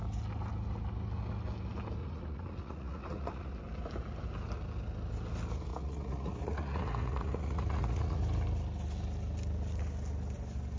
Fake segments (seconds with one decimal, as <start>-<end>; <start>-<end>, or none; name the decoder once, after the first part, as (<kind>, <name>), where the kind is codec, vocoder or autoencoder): 2.0-3.5 (vocoder, Vocos); 5.7-8.2